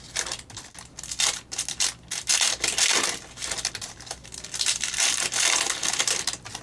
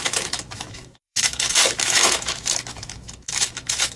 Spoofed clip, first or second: second